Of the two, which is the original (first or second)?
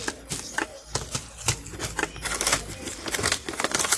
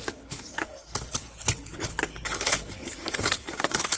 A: first